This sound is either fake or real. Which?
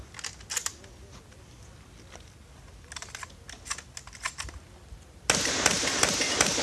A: real